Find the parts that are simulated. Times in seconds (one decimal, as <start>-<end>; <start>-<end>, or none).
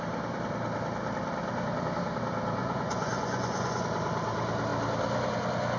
2.6-3.8